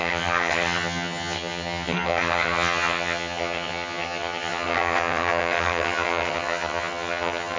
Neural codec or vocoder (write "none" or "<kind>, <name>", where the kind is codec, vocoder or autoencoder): vocoder, HiFi-GAN